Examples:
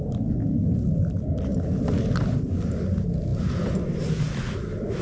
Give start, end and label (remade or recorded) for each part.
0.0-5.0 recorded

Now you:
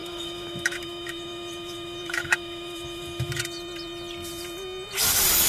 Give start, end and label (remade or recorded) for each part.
0.0-3.3 remade; 3.3-5.5 recorded

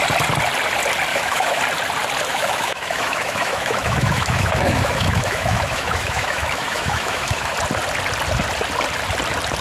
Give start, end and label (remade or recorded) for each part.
0.0-1.1 recorded; 1.1-1.6 remade; 1.6-2.3 recorded; 2.3-7.5 remade; 7.5-9.6 recorded

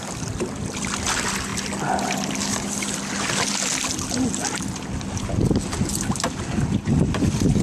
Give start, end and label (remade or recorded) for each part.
0.0-7.6 recorded

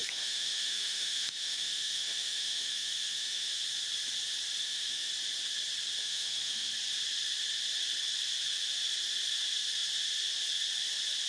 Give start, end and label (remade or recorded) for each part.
0.0-3.6 remade; 3.6-4.6 recorded; 4.6-5.1 remade; 5.1-6.0 recorded; 6.0-6.7 remade; 6.7-11.3 recorded

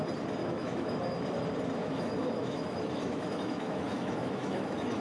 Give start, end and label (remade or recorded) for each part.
0.0-0.4 recorded; 0.4-1.0 remade; 1.0-1.8 recorded; 1.8-5.0 remade

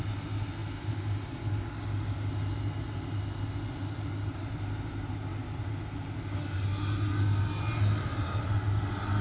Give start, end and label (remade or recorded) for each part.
0.0-9.2 recorded